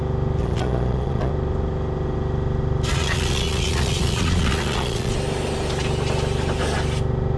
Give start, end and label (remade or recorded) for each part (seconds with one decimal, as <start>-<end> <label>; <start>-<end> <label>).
0.0-0.4 recorded; 0.4-1.3 remade; 1.3-2.9 recorded; 2.9-5.1 remade; 5.1-7.4 recorded